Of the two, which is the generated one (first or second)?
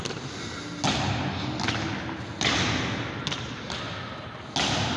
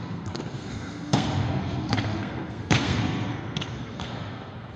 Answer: second